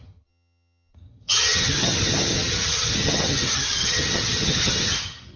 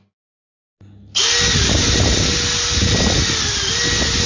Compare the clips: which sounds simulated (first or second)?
first